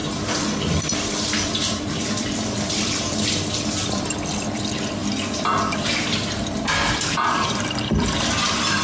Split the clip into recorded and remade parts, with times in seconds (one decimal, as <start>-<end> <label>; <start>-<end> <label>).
0.0-5.0 remade; 5.0-7.1 recorded; 7.1-8.8 remade